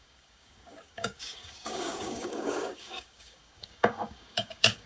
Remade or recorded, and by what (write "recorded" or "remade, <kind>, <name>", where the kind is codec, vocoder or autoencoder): remade, codec, DAC